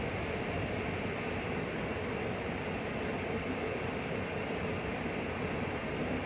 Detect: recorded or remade recorded